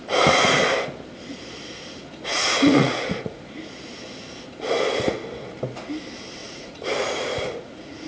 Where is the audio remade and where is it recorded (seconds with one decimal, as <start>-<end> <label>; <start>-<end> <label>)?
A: 0.0-2.3 recorded; 2.3-3.4 remade; 3.4-6.4 recorded; 6.4-8.1 remade